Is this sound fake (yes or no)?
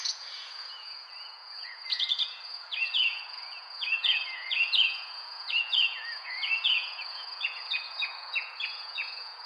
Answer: yes